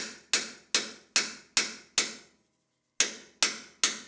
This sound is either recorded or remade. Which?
recorded